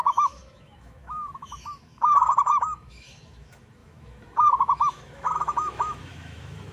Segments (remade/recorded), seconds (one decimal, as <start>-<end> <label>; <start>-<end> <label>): 0.0-6.7 remade